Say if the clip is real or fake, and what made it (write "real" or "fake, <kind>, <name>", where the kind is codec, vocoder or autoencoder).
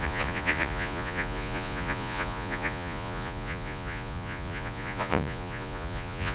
fake, vocoder, Vocos